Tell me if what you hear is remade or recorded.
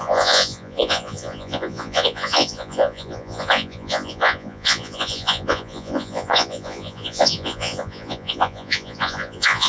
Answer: remade